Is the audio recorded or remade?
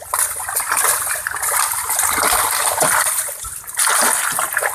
recorded